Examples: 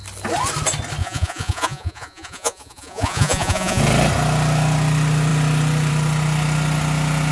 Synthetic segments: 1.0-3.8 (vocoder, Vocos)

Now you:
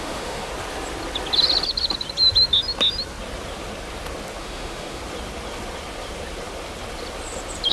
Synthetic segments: 0.0-0.5 (autoencoder, DAC-VAE); 4.4-5.0

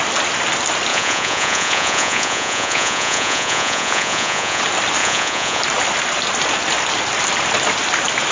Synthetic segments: 0.9-4.6 (vocoder, Vocos); 5.0-5.6

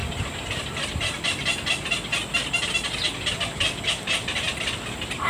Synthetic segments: 0.0-1.7 (vocoder, BigVGAN v2)